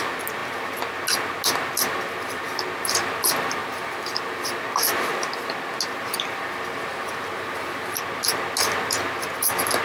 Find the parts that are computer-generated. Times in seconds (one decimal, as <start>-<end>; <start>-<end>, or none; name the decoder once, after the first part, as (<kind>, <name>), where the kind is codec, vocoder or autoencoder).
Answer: 3.6-4.6 (vocoder, BigVGAN v2); 6.9-8.0